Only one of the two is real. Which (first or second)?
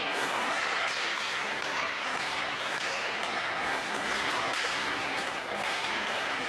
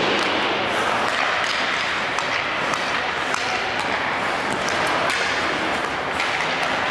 second